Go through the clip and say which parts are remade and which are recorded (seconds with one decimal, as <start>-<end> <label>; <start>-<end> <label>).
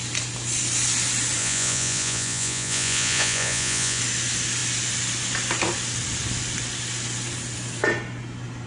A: 0.0-1.4 recorded; 1.4-4.0 remade; 4.0-8.7 recorded